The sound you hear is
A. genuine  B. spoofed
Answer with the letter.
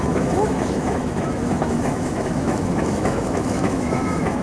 B